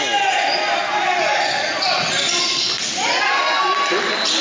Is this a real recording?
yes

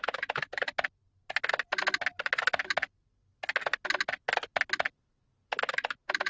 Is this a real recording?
yes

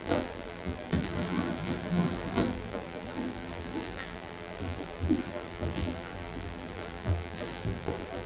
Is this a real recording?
no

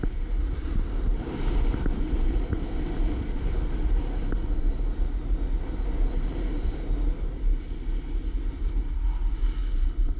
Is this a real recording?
yes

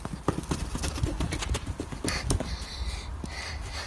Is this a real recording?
yes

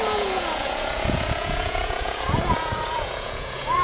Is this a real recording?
no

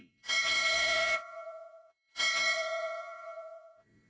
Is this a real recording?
no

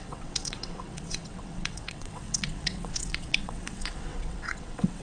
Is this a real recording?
no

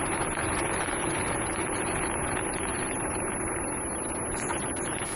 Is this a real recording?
yes